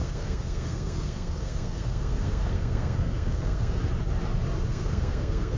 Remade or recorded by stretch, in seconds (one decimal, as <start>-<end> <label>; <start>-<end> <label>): 0.0-3.8 remade; 3.8-4.7 recorded; 4.7-5.6 remade